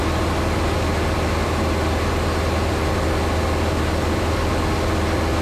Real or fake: real